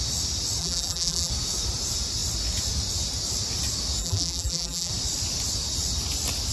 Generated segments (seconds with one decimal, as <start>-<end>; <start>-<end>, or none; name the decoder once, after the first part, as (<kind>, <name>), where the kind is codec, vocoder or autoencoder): 0.6-1.3 (vocoder, BigVGAN v2); 4.0-4.9